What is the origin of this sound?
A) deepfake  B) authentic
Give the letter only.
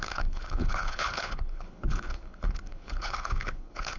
A